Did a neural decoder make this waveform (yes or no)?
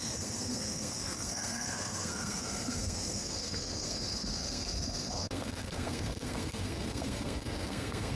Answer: yes